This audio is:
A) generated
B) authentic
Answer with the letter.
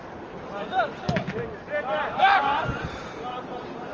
B